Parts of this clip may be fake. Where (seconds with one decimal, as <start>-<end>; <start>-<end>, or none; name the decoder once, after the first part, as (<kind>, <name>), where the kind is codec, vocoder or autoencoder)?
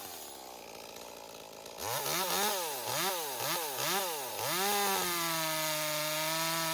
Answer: none